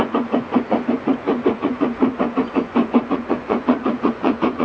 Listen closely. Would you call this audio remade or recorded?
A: remade